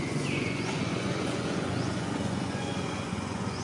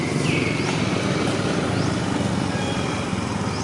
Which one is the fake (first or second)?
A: first